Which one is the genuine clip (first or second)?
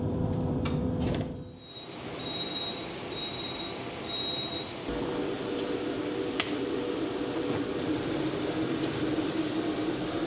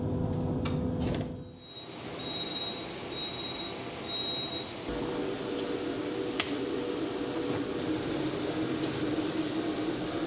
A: second